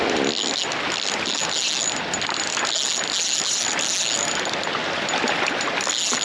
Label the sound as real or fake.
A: real